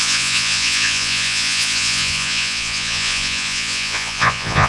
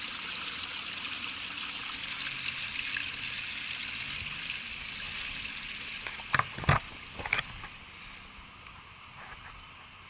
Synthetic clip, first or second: first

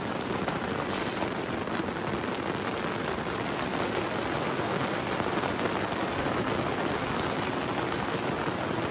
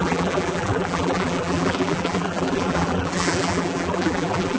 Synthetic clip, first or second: second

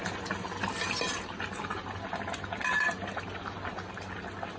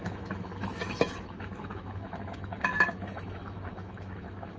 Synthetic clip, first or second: second